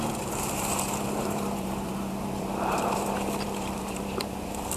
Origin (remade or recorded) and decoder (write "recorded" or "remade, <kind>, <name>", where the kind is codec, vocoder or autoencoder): remade, vocoder, BigVGAN v2